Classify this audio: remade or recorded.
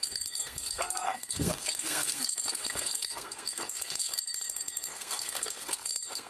remade